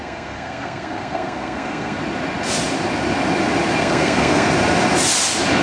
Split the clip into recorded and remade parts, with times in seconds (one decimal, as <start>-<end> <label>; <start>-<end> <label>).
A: 0.0-2.0 remade; 2.0-3.8 recorded; 3.8-4.5 remade; 4.5-5.6 recorded